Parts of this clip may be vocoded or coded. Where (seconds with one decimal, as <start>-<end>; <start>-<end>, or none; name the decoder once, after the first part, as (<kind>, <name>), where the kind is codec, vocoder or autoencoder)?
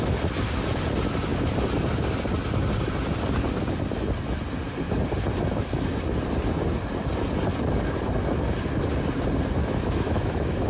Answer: 9.6-10.7 (autoencoder, DAC-VAE)